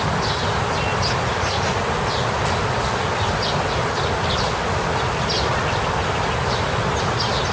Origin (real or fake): real